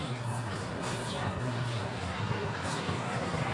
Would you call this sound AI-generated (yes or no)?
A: yes